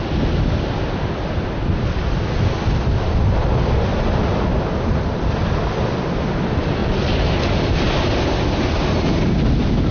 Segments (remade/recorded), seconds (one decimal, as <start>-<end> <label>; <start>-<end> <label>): 0.0-9.9 recorded